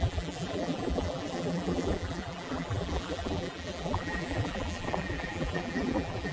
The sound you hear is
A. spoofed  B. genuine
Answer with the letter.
A